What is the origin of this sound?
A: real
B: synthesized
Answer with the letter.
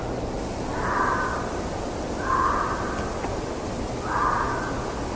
A